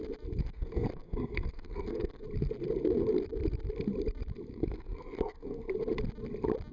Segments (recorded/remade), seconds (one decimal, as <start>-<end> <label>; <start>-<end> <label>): 0.0-0.4 recorded; 0.4-2.2 remade; 2.2-4.5 recorded; 4.5-5.7 remade; 5.7-6.7 recorded